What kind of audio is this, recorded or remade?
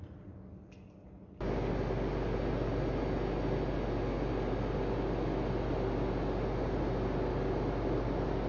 recorded